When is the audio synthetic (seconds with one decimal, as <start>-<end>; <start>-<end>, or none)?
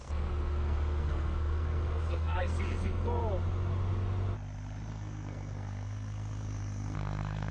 0.0-3.2; 4.9-7.5